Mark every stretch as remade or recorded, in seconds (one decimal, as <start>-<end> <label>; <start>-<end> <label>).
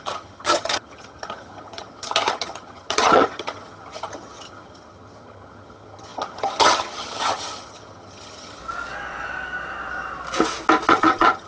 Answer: 0.0-8.6 remade; 8.6-10.9 recorded; 10.9-11.5 remade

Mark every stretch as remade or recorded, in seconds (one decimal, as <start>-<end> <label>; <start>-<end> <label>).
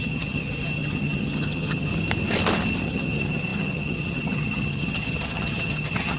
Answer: 0.0-1.9 remade; 1.9-2.8 recorded; 2.8-6.2 remade